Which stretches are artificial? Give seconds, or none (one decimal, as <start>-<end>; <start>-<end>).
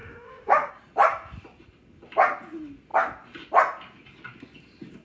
0.0-0.7